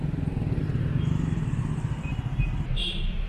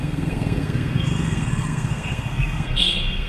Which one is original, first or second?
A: first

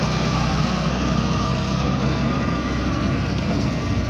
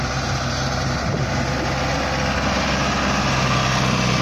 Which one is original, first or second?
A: second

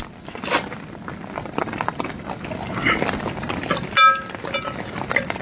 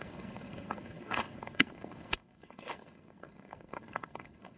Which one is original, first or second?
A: first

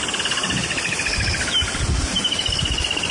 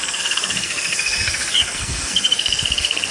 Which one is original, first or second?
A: first